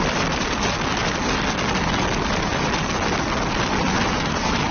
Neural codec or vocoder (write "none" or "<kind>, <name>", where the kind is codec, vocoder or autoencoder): none